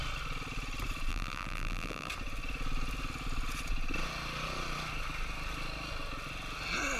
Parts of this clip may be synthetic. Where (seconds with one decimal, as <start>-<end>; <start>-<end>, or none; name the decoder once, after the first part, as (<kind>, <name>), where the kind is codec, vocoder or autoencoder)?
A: 1.1-2.1 (vocoder, BigVGAN v2)